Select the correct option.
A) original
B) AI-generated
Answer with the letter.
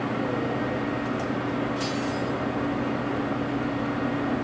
A